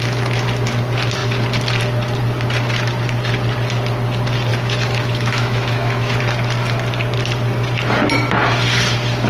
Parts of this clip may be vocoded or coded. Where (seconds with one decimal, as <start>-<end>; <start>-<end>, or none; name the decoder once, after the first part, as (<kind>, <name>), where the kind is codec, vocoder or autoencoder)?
4.5-6.2 (autoencoder, DAC-VAE)